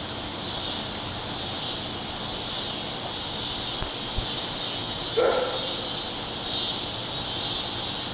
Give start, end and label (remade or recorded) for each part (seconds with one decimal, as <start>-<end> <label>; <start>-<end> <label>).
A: 0.0-8.1 recorded